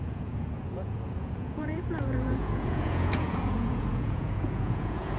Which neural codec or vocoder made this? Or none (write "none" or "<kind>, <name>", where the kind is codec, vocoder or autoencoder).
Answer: vocoder, Vocos